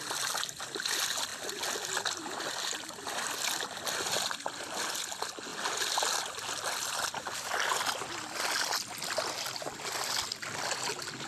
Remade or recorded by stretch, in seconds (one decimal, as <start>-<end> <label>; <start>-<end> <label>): 0.0-11.3 recorded